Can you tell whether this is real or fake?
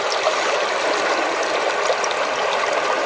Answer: real